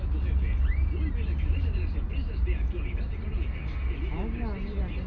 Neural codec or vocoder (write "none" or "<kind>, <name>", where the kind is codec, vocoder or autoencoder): none